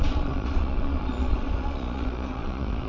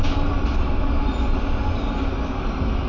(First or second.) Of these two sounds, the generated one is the first